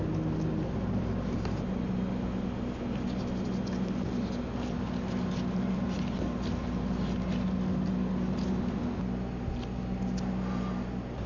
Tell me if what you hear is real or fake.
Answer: real